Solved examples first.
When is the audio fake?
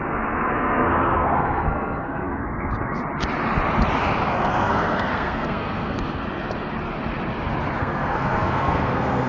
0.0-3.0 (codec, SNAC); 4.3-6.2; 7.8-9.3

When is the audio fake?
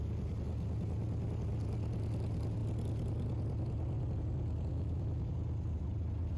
4.7-5.3 (autoencoder, DAC-VAE)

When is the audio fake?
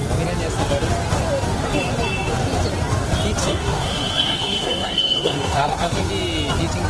3.4-6.1 (codec, SNAC)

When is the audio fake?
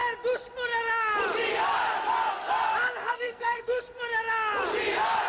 3.0-3.8 (codec, SNAC)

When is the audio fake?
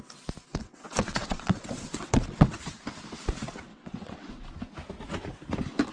0.4-2.8 (vocoder, WaveNeXt); 3.7-4.3